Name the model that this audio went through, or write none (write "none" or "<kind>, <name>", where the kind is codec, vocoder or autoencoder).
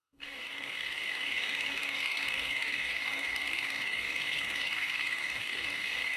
codec, DAC